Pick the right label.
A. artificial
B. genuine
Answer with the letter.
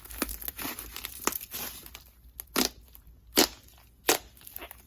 B